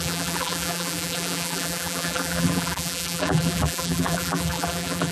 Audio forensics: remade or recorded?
remade